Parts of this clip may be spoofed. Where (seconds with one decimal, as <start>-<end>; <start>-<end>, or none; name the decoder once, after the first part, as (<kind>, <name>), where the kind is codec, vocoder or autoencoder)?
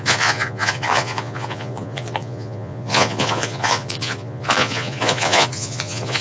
0.0-6.2 (vocoder, Vocos)